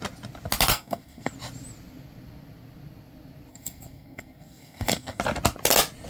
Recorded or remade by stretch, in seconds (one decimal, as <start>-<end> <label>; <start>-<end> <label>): 0.0-0.7 recorded; 0.7-1.3 remade; 1.3-3.5 recorded; 3.5-5.2 remade; 5.2-6.1 recorded